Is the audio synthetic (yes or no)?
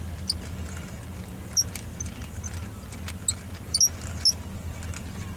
no